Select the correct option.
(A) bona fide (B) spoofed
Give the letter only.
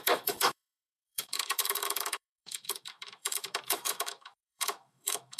B